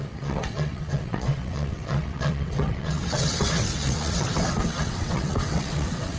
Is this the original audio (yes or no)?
no